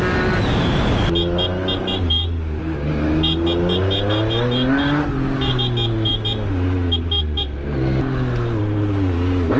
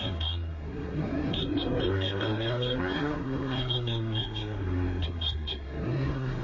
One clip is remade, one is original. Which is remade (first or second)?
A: second